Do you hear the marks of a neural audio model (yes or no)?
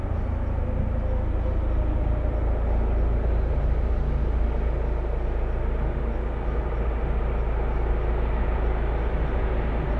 no